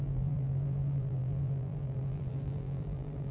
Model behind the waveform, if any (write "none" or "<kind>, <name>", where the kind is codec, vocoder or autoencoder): vocoder, BigVGAN v2